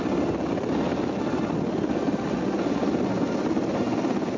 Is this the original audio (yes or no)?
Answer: yes